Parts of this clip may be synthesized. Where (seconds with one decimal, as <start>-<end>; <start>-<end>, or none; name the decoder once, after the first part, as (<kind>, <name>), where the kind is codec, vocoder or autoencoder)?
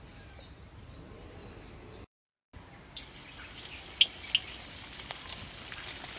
none